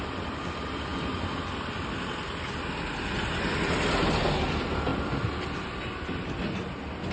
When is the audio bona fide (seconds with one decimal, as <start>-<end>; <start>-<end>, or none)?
0.0-4.9; 5.8-7.1